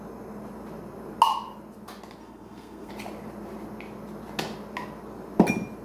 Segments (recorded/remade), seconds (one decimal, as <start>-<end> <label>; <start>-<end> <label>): 0.0-2.2 recorded; 2.2-2.9 remade; 2.9-5.8 recorded